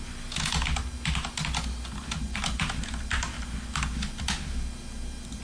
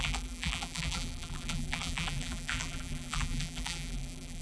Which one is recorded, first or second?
first